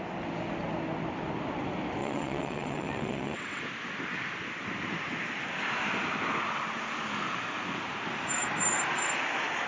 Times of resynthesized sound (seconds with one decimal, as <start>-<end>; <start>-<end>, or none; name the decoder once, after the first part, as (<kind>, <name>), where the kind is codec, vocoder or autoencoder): 2.0-3.6 (vocoder, WaveNeXt)